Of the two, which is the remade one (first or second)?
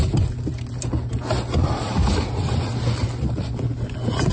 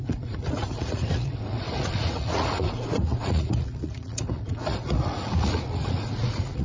second